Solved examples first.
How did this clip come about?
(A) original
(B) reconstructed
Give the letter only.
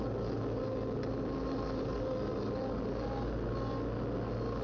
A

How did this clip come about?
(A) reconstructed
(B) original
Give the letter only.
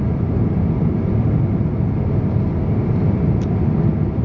B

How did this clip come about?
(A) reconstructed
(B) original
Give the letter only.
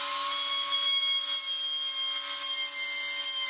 B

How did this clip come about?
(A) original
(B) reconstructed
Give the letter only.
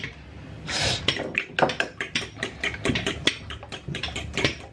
A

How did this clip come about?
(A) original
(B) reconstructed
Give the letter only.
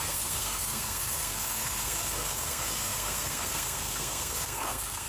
B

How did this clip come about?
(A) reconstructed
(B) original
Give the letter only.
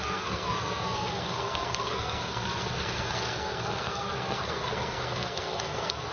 A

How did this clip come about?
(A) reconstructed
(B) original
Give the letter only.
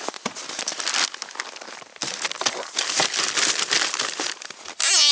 B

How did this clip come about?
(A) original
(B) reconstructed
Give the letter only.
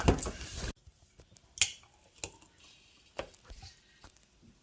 A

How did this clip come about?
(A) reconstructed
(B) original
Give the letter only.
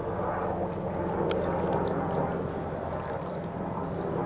B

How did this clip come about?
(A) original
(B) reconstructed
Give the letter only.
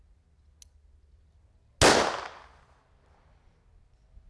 A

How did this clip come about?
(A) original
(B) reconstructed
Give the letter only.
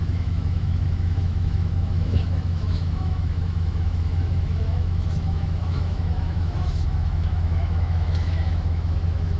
B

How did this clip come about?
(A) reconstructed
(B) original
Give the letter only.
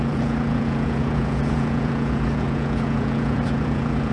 A